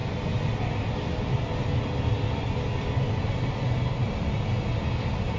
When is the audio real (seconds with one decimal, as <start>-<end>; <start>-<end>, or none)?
0.0-5.4